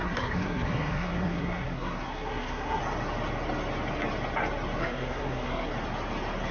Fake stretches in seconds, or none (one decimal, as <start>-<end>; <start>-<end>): 0.0-2.8; 4.8-5.7